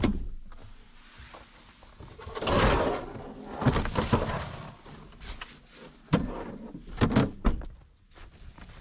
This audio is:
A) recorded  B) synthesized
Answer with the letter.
A